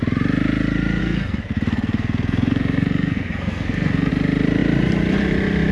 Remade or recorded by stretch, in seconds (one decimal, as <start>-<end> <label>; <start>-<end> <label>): 0.0-1.0 recorded; 1.0-4.1 remade; 4.1-5.7 recorded